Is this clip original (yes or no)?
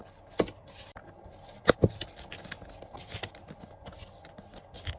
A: yes